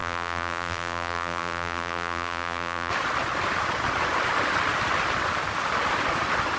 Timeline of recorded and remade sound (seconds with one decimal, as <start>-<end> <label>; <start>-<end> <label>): 0.0-2.9 remade; 2.9-6.6 recorded